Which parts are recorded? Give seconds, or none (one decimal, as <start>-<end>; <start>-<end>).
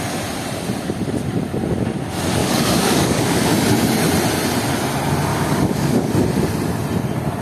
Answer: 0.0-2.4; 3.5-5.3; 6.1-7.4